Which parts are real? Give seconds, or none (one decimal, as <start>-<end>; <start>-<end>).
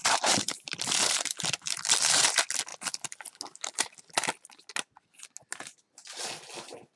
1.6-7.0